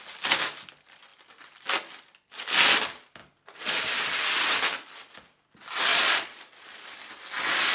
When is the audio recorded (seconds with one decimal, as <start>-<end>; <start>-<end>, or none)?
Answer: 0.0-5.9; 6.4-7.7